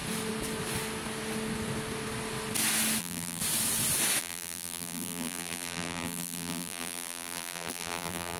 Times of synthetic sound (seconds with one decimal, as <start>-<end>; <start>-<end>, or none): 3.0-3.4; 4.2-8.4